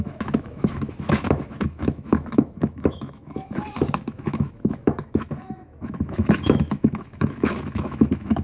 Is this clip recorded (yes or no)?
no